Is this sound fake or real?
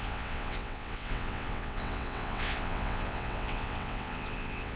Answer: fake